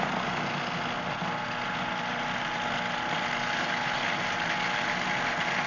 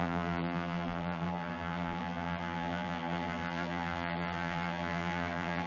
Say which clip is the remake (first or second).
second